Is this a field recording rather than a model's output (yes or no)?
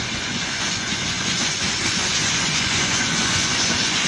no